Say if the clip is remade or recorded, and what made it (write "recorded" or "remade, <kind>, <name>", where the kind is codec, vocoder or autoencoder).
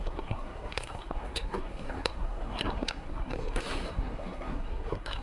remade, codec, SNAC